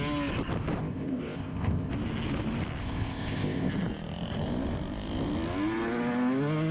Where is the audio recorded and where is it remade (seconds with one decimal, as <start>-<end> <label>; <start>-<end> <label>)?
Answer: 0.0-0.8 recorded; 0.8-1.9 remade; 1.9-2.8 recorded; 2.8-3.7 remade; 3.7-6.7 recorded